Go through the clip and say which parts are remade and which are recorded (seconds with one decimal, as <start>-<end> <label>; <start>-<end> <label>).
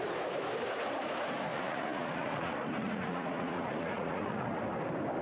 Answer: 0.0-1.5 recorded; 1.5-4.6 remade; 4.6-5.2 recorded